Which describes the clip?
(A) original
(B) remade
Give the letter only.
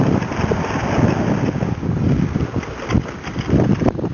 A